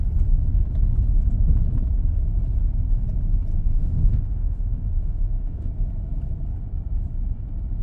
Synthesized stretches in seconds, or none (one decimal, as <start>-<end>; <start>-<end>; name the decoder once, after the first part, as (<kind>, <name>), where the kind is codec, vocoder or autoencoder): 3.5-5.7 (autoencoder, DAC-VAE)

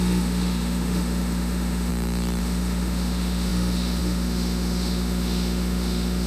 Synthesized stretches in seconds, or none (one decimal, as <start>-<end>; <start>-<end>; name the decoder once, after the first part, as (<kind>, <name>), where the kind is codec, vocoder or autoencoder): 0.0-1.9 (autoencoder, DAC-VAE); 2.4-6.3

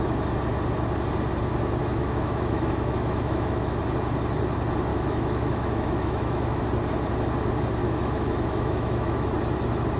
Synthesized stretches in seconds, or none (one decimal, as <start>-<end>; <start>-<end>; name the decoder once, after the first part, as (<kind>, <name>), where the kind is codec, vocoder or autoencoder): 1.8-3.8 (autoencoder, DAC-VAE); 4.9-6.6; 7.8-9.3

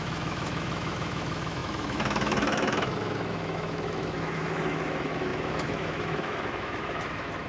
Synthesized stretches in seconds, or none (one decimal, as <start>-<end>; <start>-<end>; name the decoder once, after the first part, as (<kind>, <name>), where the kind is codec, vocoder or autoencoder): 0.0-7.5 (autoencoder, DAC-VAE)